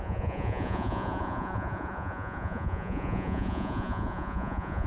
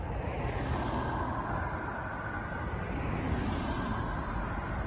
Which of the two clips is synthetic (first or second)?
first